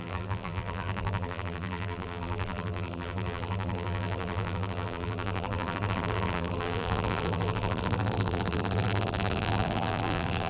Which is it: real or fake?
fake